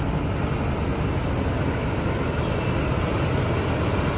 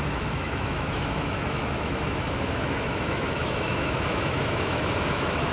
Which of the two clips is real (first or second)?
first